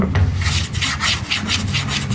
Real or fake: real